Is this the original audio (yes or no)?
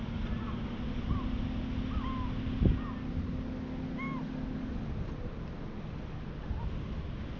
yes